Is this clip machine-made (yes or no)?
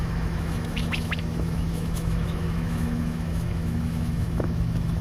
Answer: yes